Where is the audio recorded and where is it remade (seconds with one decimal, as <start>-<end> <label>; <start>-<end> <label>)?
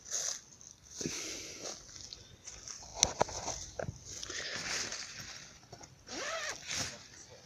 0.0-0.7 recorded; 0.7-1.2 remade; 1.2-7.5 recorded